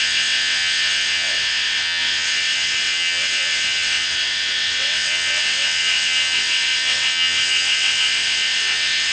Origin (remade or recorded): remade